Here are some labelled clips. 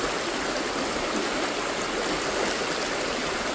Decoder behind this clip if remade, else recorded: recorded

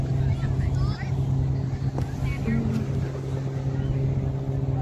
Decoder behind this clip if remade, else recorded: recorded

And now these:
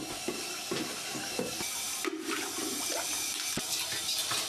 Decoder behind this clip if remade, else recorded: recorded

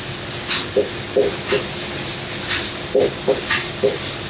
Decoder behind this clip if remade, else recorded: recorded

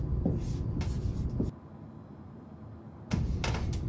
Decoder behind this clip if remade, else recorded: recorded